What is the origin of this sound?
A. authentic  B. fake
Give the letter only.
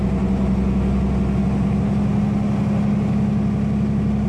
A